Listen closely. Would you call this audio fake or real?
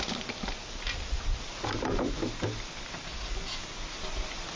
real